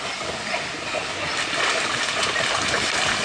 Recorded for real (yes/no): yes